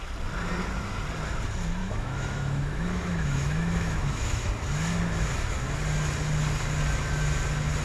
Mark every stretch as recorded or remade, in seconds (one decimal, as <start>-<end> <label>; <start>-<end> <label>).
0.0-1.8 recorded; 1.8-4.5 remade; 4.5-7.8 recorded